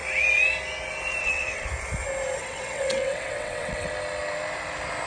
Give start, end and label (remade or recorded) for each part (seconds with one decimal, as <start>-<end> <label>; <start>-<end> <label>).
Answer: 0.0-1.2 recorded; 1.2-1.7 remade; 1.7-2.4 recorded; 2.4-3.9 remade; 3.9-5.1 recorded